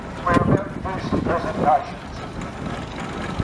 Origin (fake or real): real